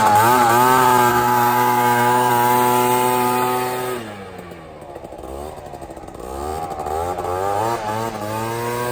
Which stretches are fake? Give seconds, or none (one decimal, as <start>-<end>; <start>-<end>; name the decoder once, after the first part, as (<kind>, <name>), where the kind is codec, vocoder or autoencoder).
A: 1.1-2.3 (codec, SNAC)